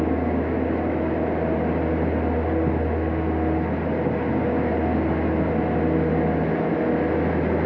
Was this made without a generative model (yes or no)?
yes